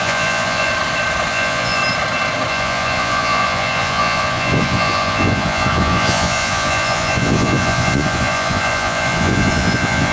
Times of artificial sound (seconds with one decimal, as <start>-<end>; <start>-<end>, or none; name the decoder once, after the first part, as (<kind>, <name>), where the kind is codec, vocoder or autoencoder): 0.0-0.7 (vocoder, Vocos); 1.3-1.8; 2.5-10.1